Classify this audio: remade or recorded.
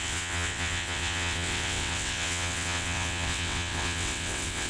remade